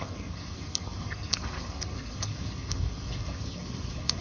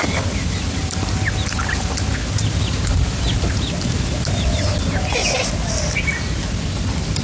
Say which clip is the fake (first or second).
first